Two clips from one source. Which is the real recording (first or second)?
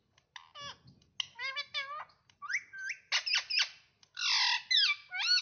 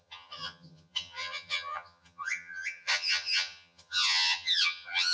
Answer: first